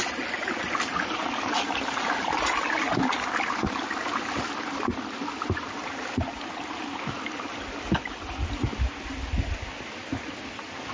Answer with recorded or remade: recorded